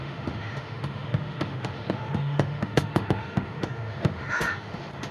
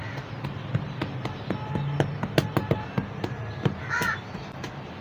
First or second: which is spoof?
first